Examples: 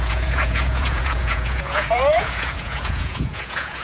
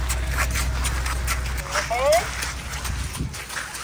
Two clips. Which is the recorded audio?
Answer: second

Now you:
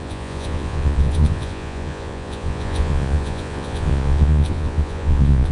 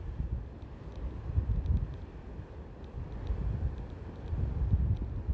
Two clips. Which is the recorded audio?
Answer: second